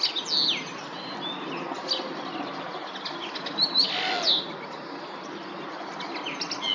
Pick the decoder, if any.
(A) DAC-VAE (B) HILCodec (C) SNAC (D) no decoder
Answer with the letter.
D